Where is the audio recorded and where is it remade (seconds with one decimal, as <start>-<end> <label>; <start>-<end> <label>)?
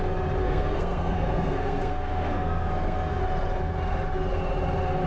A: 0.0-0.4 recorded; 0.4-3.2 remade; 3.2-5.1 recorded